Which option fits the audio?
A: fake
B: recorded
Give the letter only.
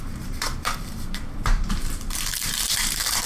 A